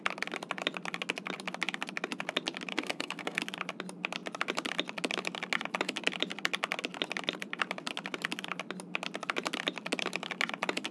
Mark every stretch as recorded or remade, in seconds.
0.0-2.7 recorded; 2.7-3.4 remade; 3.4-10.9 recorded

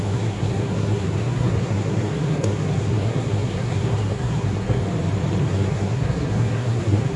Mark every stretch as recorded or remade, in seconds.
0.0-4.8 remade; 4.8-5.4 recorded; 5.4-7.2 remade

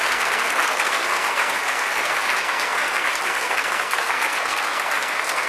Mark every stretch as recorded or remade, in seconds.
0.0-5.5 remade

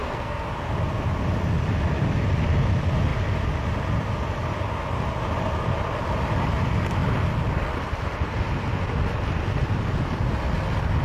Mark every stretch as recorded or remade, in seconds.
0.0-0.5 remade; 0.5-11.0 recorded

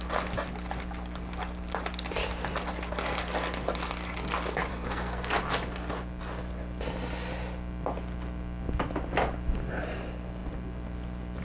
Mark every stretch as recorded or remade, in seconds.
0.0-4.7 recorded; 4.7-5.4 remade; 5.4-11.4 recorded